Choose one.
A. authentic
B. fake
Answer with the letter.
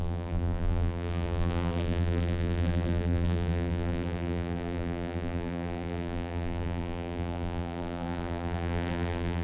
B